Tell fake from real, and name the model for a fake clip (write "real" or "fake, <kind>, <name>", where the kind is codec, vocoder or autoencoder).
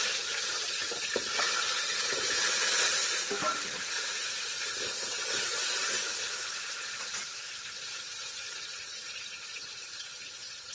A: fake, vocoder, BigVGAN v2